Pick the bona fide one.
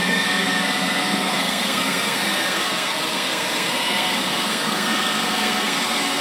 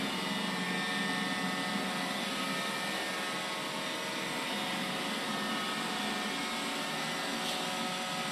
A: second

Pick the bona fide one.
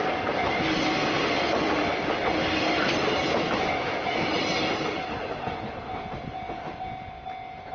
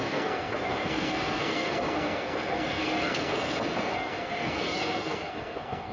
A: first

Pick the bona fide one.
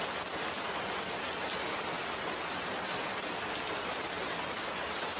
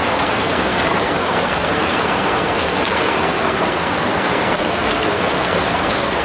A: first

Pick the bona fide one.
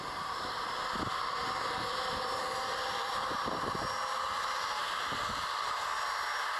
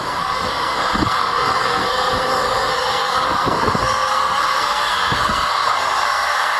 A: first